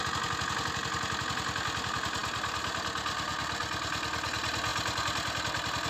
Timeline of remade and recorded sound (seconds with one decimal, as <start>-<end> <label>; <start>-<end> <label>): 0.0-5.9 recorded